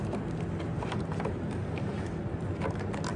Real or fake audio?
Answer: real